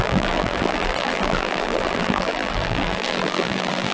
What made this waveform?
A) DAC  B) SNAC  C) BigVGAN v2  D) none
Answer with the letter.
C